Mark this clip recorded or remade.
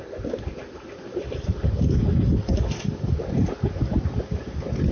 recorded